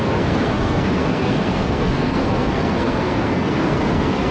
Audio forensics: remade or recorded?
remade